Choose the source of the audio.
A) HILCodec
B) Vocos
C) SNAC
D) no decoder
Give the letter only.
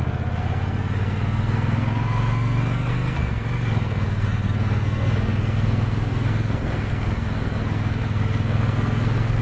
C